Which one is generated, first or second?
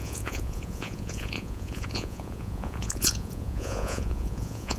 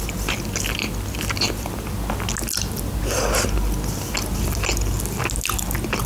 first